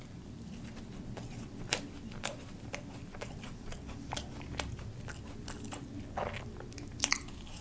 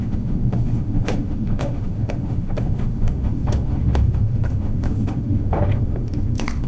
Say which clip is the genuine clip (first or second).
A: first